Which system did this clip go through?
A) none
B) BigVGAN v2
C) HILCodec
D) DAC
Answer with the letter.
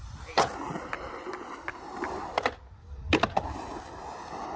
A